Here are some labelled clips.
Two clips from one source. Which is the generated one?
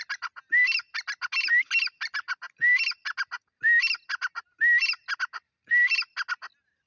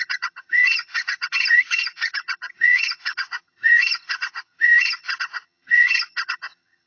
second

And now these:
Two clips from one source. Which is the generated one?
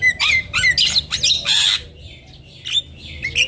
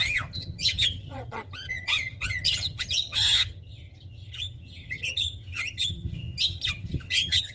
second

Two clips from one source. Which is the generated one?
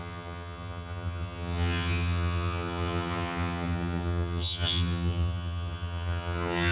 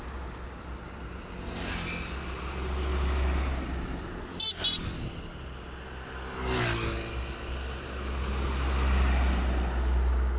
first